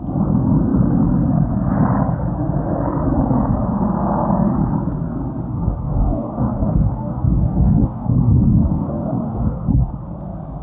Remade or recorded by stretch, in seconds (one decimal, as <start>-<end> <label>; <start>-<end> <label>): 0.0-5.5 recorded; 5.5-9.9 remade; 9.9-10.6 recorded